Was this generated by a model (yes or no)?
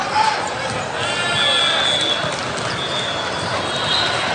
no